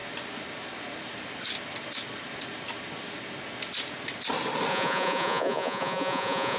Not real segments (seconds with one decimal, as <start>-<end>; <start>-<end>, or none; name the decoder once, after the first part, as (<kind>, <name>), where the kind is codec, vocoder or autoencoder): 4.7-6.6 (vocoder, Vocos)